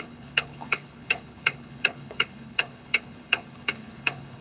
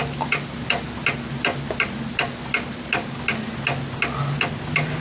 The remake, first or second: first